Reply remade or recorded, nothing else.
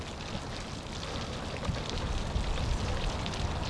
recorded